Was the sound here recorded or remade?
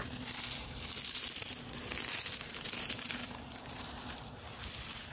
remade